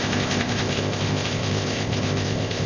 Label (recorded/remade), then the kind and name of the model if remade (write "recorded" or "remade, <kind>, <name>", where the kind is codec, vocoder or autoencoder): remade, codec, ZipCodec